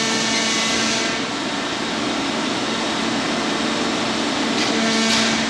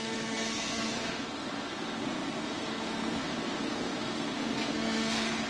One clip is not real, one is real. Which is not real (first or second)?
second